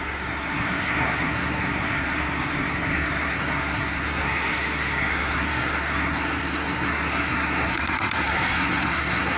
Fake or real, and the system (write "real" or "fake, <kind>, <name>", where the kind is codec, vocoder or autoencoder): fake, codec, SNAC